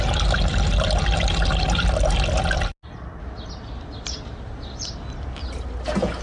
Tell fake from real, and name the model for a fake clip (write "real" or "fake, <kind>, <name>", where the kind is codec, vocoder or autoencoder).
real